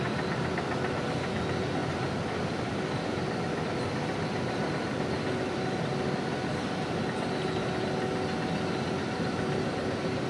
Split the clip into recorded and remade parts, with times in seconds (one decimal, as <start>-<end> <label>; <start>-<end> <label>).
0.0-10.3 recorded